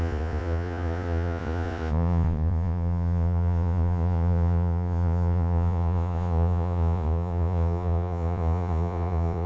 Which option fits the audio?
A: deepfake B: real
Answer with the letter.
A